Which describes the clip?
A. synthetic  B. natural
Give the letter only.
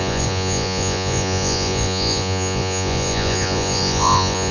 A